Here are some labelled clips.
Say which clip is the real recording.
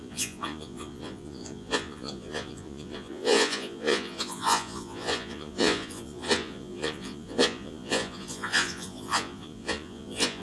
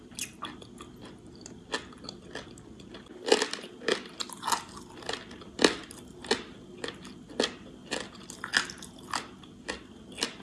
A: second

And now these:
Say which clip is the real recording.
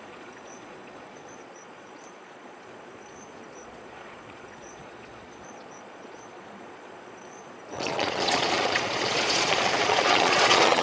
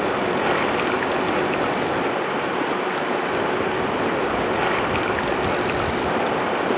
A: second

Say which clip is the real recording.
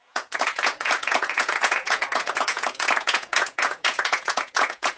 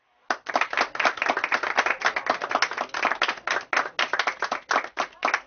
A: second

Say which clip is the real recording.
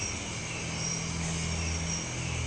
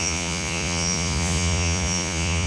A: first